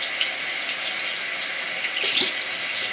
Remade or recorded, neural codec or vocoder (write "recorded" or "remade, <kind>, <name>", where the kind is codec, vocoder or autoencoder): recorded